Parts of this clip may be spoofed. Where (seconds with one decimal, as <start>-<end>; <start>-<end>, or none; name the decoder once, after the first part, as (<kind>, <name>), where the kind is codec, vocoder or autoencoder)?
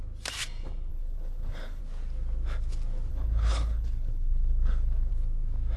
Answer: 0.9-1.8 (codec, HILCodec); 3.1-5.1